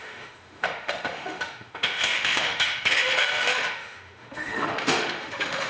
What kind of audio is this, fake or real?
fake